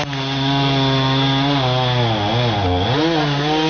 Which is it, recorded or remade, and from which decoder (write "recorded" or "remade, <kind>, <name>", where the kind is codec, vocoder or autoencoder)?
recorded